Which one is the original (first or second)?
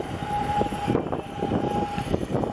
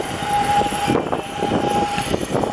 second